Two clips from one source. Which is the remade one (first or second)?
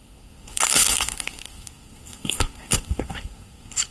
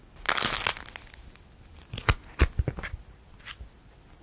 first